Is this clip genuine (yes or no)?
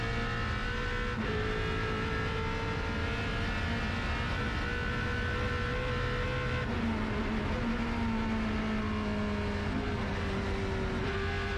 yes